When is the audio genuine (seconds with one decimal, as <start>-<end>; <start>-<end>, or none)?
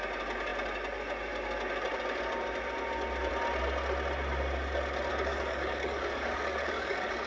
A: 0.0-5.1